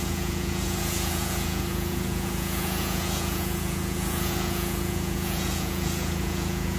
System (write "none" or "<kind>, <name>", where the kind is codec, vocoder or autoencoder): vocoder, Vocos